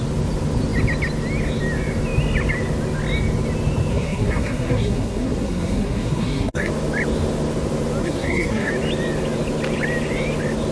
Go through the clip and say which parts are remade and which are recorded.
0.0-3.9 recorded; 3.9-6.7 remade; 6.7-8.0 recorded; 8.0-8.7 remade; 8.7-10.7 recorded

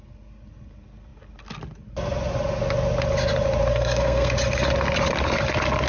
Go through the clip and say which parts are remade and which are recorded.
0.0-3.7 recorded; 3.7-4.3 remade; 4.3-5.9 recorded

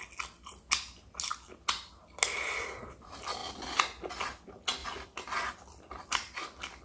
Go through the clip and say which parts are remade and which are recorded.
0.0-6.8 recorded

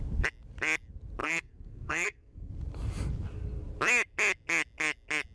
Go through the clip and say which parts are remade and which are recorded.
0.0-1.2 recorded; 1.2-2.5 remade; 2.5-5.3 recorded

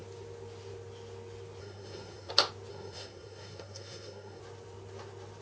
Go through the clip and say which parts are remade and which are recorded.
0.0-1.6 recorded; 1.6-2.3 remade; 2.3-2.7 recorded; 2.7-4.4 remade; 4.4-5.4 recorded